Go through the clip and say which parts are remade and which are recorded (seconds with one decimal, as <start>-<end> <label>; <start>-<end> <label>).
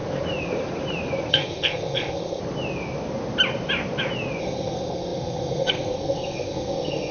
0.0-1.3 recorded; 1.3-2.4 remade; 2.4-4.4 recorded; 4.4-7.1 remade